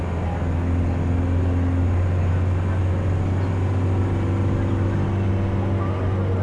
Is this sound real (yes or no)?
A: yes